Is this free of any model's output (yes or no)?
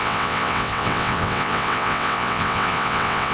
no